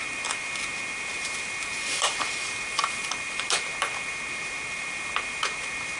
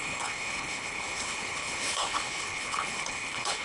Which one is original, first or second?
first